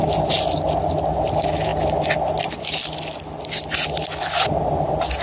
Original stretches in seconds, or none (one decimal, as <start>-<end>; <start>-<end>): 0.0-5.2